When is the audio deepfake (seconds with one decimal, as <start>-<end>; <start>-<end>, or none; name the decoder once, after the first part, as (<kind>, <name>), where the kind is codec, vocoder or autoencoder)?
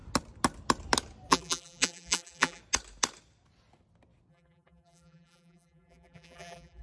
1.3-2.6 (vocoder, BigVGAN v2); 4.3-6.8